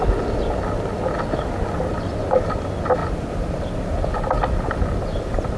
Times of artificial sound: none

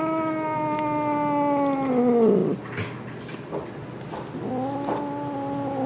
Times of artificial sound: none

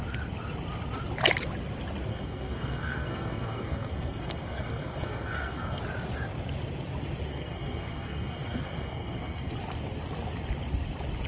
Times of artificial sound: 2.1-5.8; 7.3-9.5

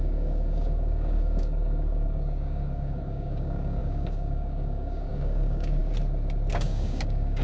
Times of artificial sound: 0.0-5.8; 6.5-7.4

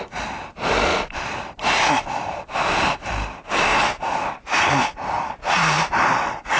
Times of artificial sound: none

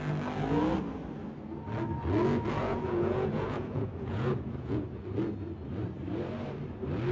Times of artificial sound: 2.6-4.8

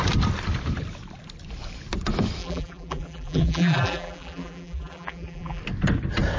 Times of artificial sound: 2.4-5.6